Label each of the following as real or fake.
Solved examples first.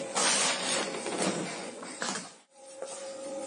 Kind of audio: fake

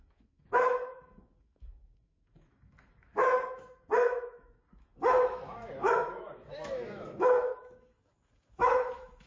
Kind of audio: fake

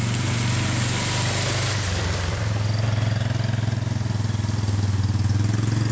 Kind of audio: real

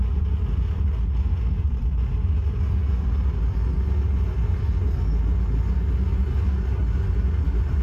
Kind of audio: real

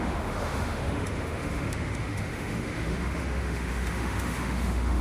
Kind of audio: fake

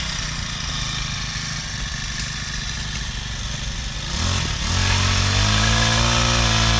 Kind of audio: real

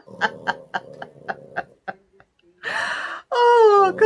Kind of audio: real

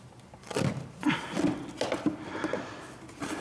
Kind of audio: real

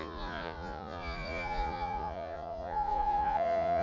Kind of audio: fake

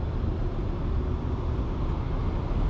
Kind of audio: real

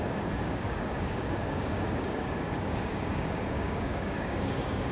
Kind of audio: fake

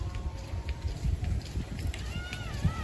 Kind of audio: fake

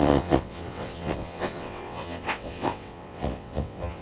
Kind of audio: fake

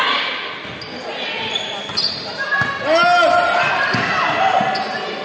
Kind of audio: real